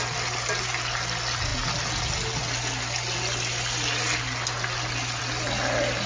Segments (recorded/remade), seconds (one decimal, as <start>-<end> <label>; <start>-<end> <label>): 0.0-6.1 recorded